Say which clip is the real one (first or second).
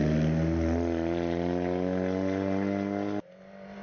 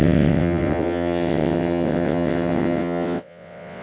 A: first